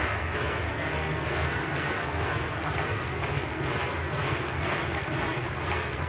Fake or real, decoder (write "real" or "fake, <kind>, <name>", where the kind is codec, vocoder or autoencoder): fake, codec, SNAC